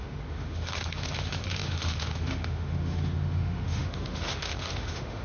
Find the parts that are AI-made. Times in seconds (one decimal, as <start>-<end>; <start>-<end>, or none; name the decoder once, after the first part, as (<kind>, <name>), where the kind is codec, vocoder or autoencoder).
0.0-5.2 (autoencoder, DAC-VAE)